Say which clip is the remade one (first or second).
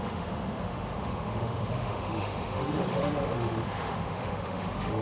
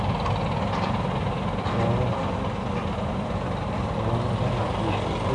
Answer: first